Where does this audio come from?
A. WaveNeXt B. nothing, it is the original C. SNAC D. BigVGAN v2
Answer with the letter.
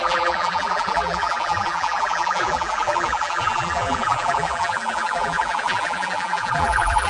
D